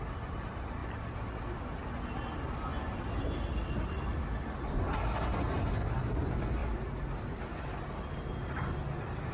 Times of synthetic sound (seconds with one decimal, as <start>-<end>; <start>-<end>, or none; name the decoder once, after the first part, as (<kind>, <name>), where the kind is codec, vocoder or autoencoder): none